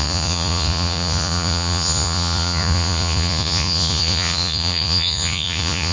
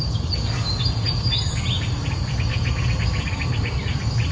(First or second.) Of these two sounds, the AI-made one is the first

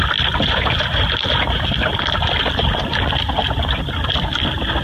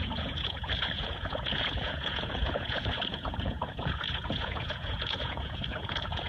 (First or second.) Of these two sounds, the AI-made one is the second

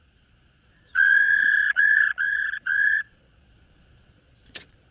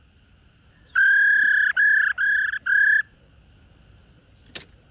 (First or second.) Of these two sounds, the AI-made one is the first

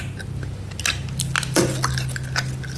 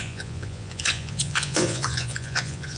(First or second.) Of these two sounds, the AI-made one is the second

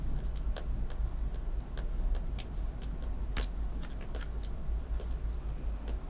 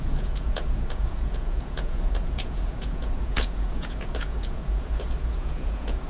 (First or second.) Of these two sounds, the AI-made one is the second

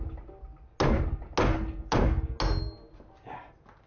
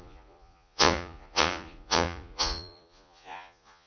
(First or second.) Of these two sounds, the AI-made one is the second